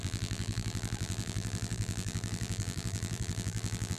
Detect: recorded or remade remade